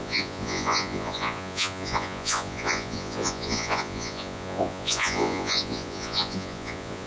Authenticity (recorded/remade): remade